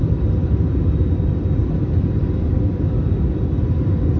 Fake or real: real